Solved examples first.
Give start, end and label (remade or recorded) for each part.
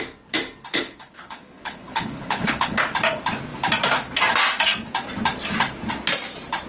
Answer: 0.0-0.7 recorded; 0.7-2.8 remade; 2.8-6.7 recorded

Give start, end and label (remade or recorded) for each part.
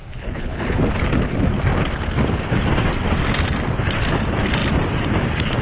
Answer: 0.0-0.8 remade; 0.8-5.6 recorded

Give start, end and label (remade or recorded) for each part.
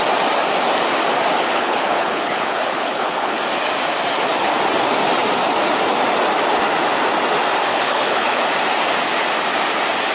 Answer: 0.0-1.4 recorded; 1.4-3.4 remade; 3.4-7.7 recorded; 7.7-8.4 remade; 8.4-10.1 recorded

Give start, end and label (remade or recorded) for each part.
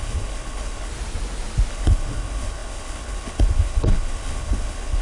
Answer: 0.0-0.9 remade; 0.9-1.7 recorded; 1.7-5.0 remade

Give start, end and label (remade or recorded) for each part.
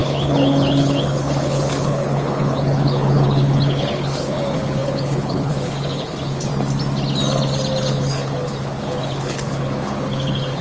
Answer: 0.0-6.5 remade; 6.5-7.8 recorded; 7.8-10.6 remade